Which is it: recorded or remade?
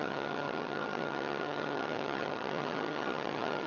remade